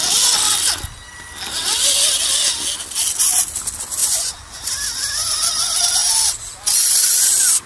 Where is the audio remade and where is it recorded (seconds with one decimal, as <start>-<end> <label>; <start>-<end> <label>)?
0.0-4.0 recorded; 4.0-4.6 remade; 4.6-7.7 recorded